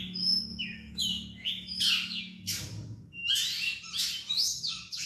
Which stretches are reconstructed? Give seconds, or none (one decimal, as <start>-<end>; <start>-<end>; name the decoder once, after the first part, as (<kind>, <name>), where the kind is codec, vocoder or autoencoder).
0.0-3.2 (codec, DAC); 4.3-5.1

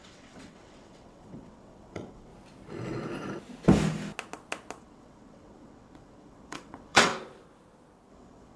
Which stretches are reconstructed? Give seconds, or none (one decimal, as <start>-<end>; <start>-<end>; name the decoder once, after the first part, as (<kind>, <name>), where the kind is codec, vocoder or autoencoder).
0.0-2.3 (vocoder, WaveNeXt); 4.8-7.1; 8.1-8.6

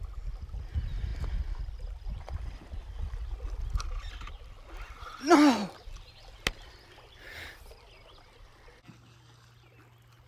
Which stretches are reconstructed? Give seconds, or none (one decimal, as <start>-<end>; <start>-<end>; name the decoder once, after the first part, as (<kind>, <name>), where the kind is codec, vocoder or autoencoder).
none

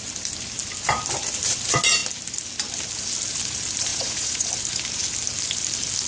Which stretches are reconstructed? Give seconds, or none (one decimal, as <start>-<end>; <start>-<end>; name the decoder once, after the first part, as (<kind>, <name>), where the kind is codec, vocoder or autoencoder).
3.9-4.5 (vocoder, Vocos)